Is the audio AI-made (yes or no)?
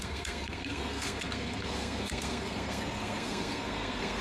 yes